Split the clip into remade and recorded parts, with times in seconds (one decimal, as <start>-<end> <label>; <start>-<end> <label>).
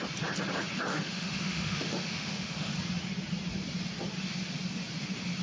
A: 0.0-0.9 recorded; 0.9-2.7 remade; 2.7-5.4 recorded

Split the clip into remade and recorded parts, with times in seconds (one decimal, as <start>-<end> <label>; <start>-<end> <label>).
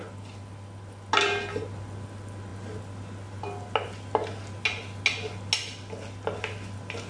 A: 0.0-7.1 recorded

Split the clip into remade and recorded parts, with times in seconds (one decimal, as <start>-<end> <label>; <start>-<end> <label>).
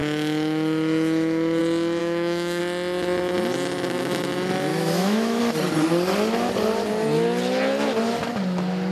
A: 0.0-1.6 remade; 1.6-2.0 recorded; 2.0-2.6 remade; 2.6-4.7 recorded; 4.7-5.4 remade; 5.4-8.9 recorded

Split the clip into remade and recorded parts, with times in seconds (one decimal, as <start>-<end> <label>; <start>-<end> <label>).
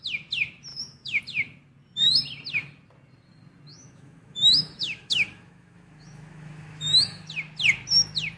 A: 0.0-0.7 recorded; 0.7-1.2 remade; 1.2-3.7 recorded; 3.7-7.3 remade; 7.3-8.4 recorded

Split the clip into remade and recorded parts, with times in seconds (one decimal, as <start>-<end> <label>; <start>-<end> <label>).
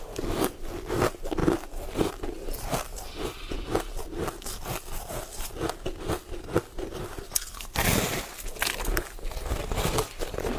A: 0.0-10.6 recorded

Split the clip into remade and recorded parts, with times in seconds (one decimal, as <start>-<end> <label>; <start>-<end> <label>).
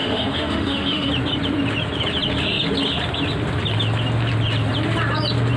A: 0.0-1.1 remade; 1.1-5.6 recorded